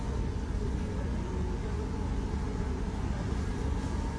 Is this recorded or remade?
remade